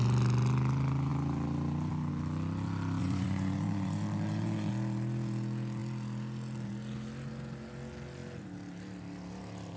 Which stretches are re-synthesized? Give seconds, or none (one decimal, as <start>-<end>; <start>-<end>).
3.0-4.7